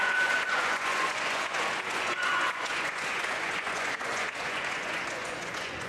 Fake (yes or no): yes